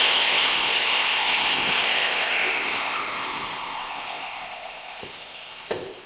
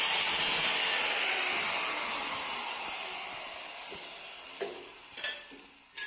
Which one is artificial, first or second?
first